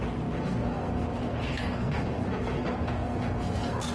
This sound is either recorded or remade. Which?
remade